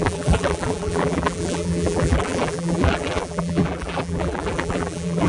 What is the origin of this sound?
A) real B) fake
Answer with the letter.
B